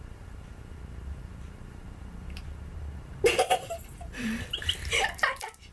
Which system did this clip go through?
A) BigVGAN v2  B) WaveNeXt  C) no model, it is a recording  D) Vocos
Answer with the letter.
A